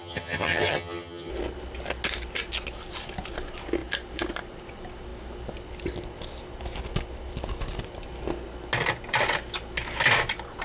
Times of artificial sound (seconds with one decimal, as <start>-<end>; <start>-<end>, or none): 0.0-1.3